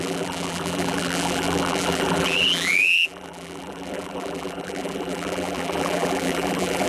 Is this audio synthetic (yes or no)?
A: yes